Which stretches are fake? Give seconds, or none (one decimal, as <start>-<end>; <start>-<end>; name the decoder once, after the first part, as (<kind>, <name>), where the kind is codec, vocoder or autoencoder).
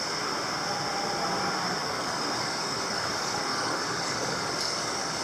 1.8-5.2 (codec, DAC)